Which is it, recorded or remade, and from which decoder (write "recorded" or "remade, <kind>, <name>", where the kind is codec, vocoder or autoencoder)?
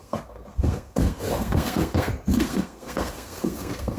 remade, codec, SNAC